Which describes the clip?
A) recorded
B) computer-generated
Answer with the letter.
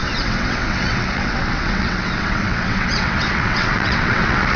B